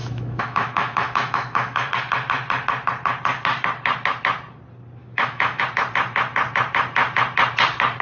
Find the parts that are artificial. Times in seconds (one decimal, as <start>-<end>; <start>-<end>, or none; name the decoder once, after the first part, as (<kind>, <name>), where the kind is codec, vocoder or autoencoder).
0.0-1.9 (autoencoder, DAC-VAE); 5.0-5.6